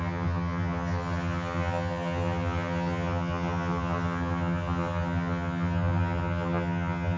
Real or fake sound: fake